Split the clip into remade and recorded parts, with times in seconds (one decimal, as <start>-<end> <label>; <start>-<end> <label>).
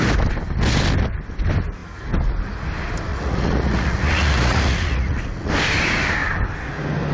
0.0-3.1 recorded; 3.1-5.5 remade; 5.5-7.1 recorded